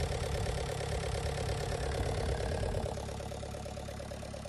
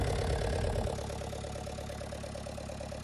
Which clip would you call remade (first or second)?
first